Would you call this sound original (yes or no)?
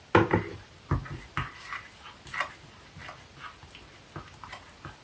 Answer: yes